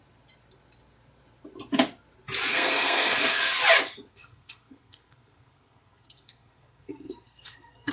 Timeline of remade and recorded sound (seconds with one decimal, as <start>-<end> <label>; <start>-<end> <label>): 0.0-2.5 recorded; 2.5-3.6 remade; 3.6-4.1 recorded; 4.1-7.9 remade